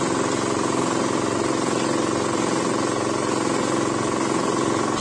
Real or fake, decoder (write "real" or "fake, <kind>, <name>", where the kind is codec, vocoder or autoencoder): real